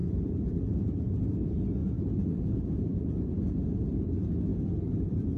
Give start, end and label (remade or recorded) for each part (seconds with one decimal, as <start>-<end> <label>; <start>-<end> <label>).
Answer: 0.0-1.2 remade; 1.2-1.8 recorded; 1.8-3.8 remade; 3.8-5.4 recorded